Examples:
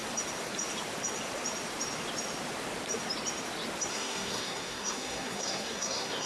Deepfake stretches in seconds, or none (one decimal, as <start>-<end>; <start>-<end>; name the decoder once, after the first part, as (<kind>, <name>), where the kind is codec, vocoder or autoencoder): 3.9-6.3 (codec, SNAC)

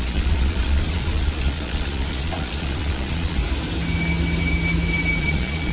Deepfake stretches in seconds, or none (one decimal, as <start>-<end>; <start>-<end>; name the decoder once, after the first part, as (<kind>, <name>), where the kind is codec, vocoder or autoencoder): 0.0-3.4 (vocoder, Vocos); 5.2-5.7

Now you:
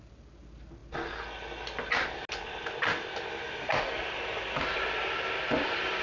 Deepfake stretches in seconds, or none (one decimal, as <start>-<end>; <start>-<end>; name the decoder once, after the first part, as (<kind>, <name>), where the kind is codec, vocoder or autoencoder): none

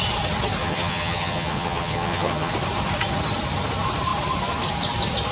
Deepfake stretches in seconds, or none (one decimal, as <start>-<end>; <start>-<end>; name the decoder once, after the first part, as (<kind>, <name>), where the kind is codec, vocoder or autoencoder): 0.6-2.5 (vocoder, HiFi-GAN)